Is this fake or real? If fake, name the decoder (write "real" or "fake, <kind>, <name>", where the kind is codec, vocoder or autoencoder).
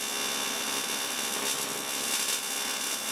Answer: real